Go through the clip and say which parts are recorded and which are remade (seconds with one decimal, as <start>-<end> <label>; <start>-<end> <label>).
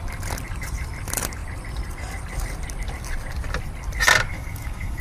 0.0-4.3 recorded; 4.3-5.0 remade